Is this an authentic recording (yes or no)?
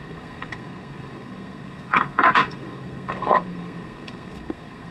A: no